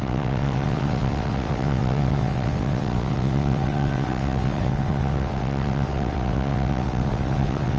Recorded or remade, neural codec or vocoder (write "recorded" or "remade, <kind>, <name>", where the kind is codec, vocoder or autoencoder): remade, vocoder, WaveNeXt